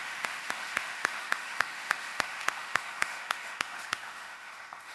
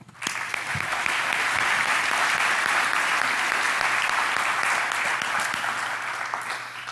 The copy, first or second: first